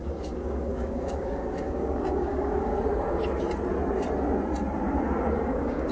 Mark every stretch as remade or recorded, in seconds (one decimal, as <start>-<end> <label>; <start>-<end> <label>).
0.0-2.7 remade; 2.7-5.5 recorded; 5.5-5.9 remade